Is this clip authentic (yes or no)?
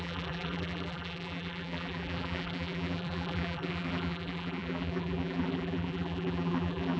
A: no